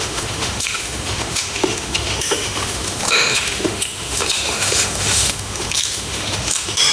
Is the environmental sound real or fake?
fake